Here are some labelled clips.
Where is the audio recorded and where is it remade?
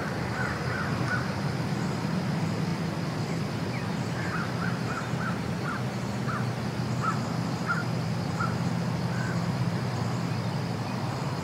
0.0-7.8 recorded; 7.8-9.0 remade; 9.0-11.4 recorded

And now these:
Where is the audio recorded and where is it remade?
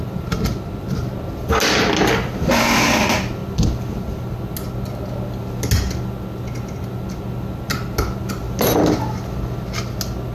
0.0-10.3 recorded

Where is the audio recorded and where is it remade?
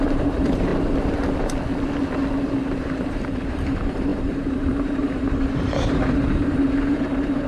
0.0-0.7 remade; 0.7-2.4 recorded; 2.4-7.5 remade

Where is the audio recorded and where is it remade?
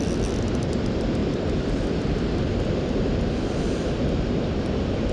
0.0-1.2 recorded; 1.2-3.5 remade; 3.5-5.1 recorded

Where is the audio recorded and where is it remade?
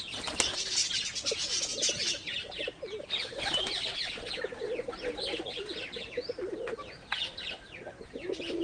0.0-8.6 recorded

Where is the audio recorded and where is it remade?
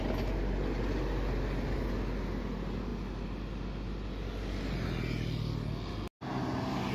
0.0-6.9 recorded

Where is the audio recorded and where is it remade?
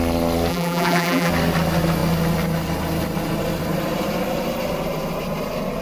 0.0-0.5 recorded; 0.5-1.3 remade; 1.3-5.8 recorded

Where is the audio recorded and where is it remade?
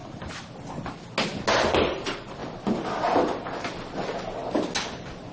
0.0-1.9 recorded; 1.9-2.4 remade; 2.4-5.3 recorded